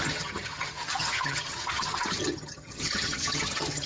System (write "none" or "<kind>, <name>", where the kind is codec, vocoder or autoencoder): vocoder, HiFi-GAN